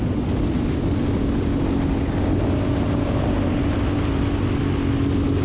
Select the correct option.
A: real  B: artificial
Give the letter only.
A